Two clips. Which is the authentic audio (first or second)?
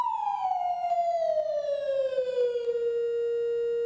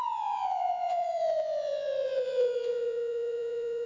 first